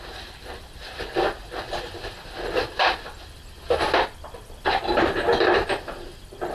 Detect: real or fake real